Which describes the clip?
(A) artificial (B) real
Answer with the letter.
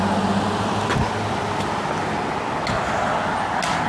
B